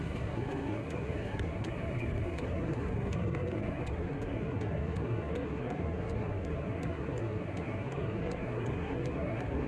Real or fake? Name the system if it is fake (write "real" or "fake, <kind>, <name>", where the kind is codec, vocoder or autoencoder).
fake, codec, SNAC